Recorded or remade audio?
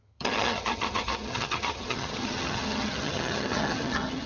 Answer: remade